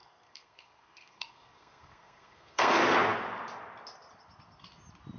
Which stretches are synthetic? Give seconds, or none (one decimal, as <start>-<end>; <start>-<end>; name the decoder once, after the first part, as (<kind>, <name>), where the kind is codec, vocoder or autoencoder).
0.0-2.7 (codec, SNAC)

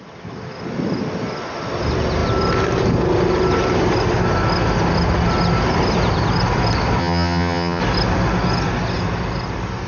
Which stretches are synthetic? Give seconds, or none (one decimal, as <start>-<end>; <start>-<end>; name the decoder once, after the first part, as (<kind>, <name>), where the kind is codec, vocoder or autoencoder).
7.0-7.8 (vocoder, HiFi-GAN)

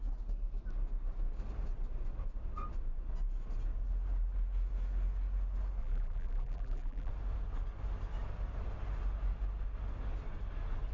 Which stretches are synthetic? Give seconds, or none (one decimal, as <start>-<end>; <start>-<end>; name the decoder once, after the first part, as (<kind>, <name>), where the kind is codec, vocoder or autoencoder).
5.8-7.1 (vocoder, BigVGAN v2)

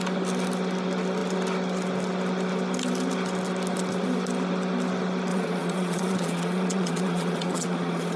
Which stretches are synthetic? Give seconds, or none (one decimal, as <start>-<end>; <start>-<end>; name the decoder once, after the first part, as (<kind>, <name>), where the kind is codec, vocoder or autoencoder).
5.3-8.2 (vocoder, Vocos)

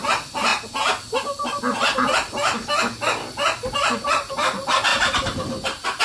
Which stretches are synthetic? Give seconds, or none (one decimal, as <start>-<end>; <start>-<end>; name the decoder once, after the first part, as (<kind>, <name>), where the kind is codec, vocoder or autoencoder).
4.9-6.0 (vocoder, BigVGAN v2)